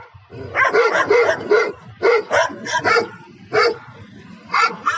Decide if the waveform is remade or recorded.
recorded